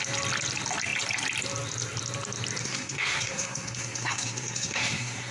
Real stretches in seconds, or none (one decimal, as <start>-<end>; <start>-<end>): 0.0-2.6